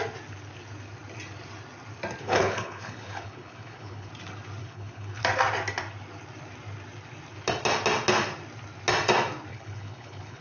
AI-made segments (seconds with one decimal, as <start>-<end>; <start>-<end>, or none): 2.2-4.1; 4.6-5.2; 9.5-10.4